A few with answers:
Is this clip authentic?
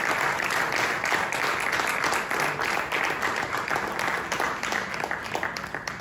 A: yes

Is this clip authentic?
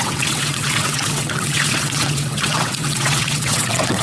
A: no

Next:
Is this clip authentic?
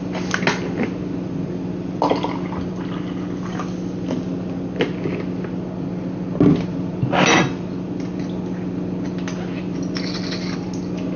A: yes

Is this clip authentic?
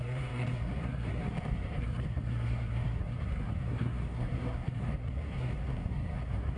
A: no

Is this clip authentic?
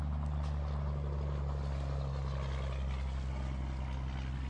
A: yes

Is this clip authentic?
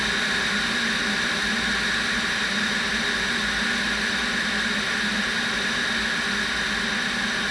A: yes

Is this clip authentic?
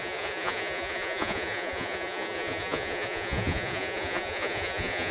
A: no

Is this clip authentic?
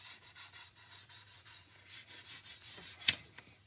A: no